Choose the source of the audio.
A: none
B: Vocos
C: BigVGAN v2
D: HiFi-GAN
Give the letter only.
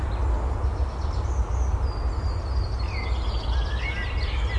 A